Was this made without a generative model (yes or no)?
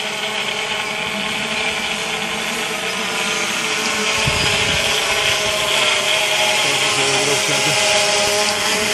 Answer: yes